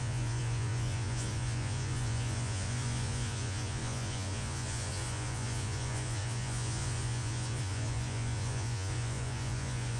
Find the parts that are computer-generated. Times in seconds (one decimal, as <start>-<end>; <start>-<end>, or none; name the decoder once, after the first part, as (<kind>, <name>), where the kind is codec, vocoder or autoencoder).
0.0-10.0 (vocoder, Vocos)